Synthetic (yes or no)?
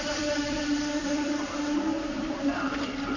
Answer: yes